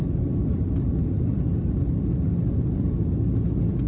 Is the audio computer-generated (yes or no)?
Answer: no